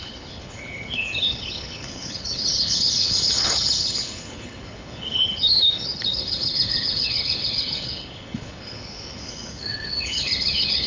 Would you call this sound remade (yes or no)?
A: yes